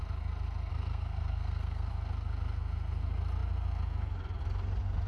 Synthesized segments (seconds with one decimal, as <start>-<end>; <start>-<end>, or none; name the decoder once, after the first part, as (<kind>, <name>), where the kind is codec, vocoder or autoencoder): 0.7-1.9 (codec, SNAC)